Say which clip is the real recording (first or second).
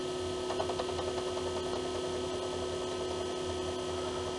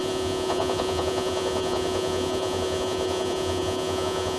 first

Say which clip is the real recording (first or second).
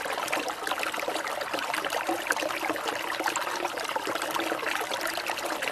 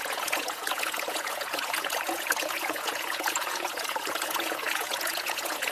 first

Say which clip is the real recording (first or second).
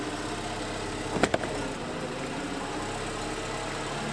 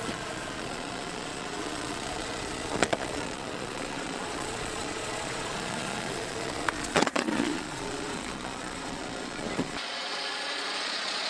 first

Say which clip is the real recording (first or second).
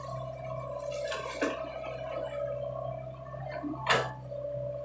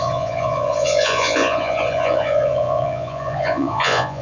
first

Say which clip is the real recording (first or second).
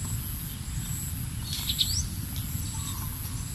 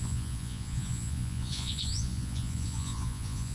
first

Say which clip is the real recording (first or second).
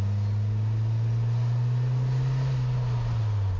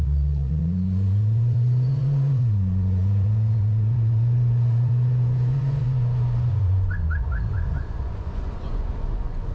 first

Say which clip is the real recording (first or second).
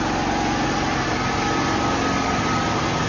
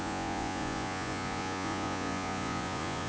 first